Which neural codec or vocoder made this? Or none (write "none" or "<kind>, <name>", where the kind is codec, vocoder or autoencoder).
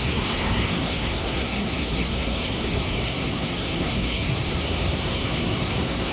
codec, SNAC